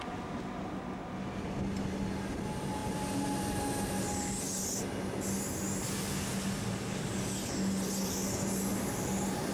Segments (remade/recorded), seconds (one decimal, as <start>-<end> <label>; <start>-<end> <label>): 0.0-9.5 recorded